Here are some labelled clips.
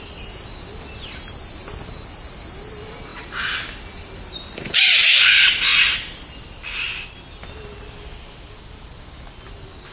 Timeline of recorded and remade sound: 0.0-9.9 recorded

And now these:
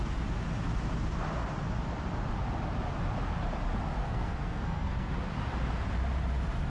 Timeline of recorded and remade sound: 0.0-4.0 recorded; 4.0-5.1 remade; 5.1-6.7 recorded